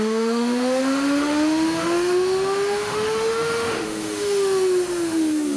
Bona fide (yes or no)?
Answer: no